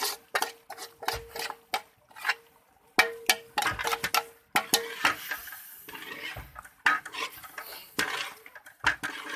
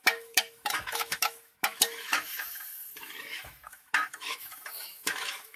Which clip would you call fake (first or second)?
second